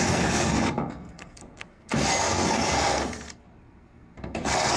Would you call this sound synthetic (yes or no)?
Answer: yes